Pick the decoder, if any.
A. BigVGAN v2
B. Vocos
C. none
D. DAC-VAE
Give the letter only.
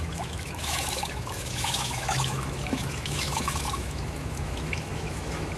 D